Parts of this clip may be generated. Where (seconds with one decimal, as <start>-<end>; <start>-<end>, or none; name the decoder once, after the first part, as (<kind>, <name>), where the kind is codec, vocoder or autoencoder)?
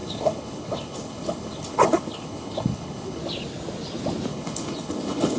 0.0-3.2 (codec, HILCodec); 4.3-5.4